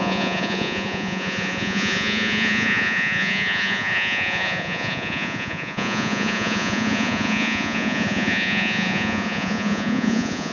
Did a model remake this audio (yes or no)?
yes